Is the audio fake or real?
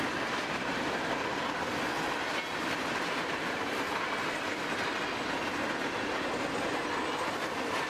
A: real